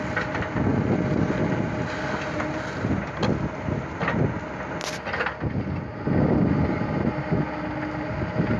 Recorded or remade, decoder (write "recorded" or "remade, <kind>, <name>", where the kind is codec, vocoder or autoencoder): recorded